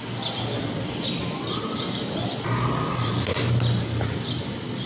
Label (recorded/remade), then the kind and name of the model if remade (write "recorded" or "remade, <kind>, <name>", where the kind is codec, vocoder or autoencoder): recorded